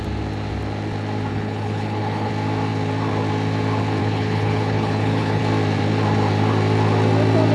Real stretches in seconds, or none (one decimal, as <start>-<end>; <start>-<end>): 0.0-1.3; 2.3-4.0; 5.4-7.5

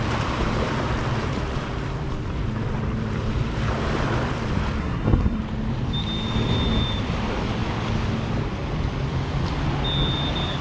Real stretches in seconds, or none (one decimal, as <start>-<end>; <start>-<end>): 0.0-4.8; 5.4-10.6

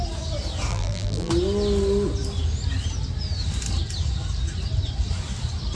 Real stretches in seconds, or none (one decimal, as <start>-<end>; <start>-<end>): 0.0-0.7; 1.3-5.7